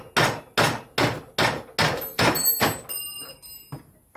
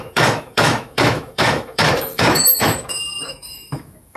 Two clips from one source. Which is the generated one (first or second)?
second